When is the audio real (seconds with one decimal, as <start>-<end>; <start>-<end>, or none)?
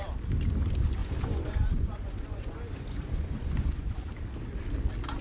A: 0.0-1.0; 4.1-5.2